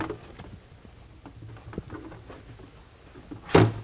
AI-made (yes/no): no